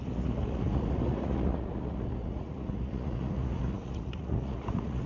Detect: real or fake fake